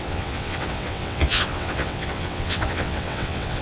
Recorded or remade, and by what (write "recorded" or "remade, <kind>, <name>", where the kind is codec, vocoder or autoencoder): remade, vocoder, WaveNeXt